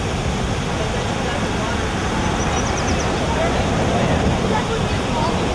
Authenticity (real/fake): real